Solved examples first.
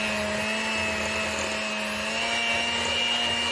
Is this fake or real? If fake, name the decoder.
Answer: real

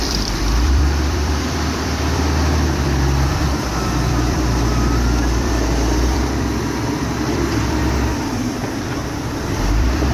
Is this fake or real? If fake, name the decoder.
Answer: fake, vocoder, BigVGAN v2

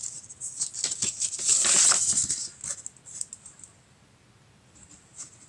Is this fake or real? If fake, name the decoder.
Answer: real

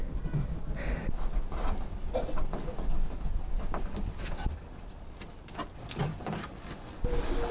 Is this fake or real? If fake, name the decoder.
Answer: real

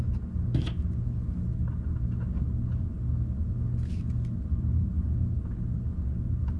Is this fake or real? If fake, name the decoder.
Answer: real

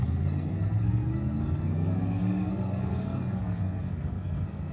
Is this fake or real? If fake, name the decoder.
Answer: fake, codec, SNAC